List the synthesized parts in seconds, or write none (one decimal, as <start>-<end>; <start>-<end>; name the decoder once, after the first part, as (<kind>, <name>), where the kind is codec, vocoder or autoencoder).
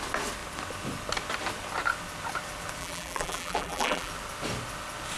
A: 2.8-4.1 (vocoder, BigVGAN v2)